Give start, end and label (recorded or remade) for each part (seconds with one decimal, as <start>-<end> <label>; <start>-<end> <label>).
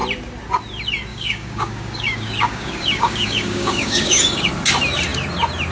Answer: 0.0-1.1 recorded; 1.1-4.5 remade; 4.5-5.7 recorded